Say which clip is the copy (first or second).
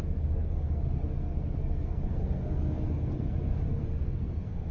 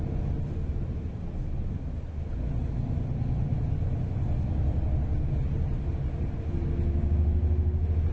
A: first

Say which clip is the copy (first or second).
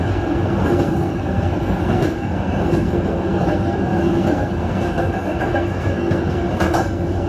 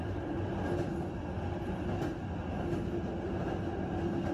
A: first